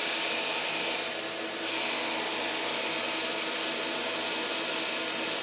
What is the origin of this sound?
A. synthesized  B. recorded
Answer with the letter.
B